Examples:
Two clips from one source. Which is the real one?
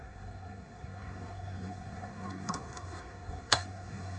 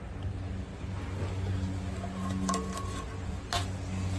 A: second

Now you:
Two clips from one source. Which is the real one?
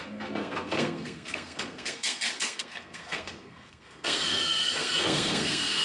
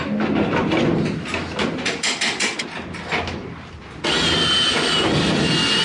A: second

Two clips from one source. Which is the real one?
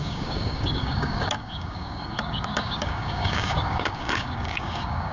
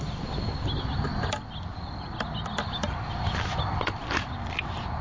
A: second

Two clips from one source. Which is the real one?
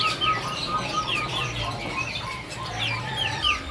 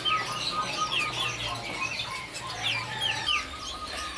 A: second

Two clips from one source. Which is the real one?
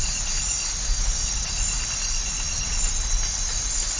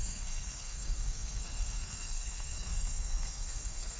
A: first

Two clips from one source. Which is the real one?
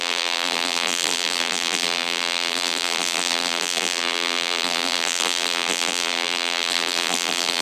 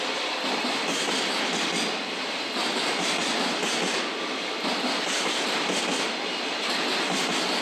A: second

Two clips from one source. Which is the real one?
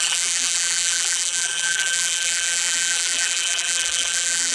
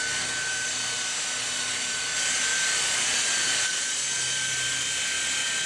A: second